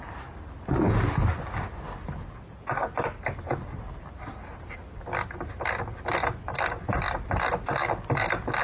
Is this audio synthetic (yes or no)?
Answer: no